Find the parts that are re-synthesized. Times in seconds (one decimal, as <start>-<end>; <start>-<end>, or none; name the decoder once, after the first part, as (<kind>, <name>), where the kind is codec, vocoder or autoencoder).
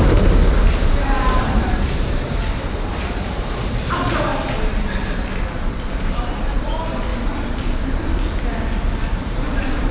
0.0-4.3 (vocoder, BigVGAN v2); 5.9-7.1; 9.2-9.9